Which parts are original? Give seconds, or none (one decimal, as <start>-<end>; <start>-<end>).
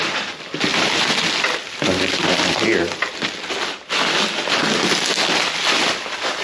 0.0-6.4